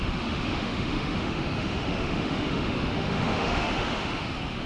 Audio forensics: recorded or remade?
remade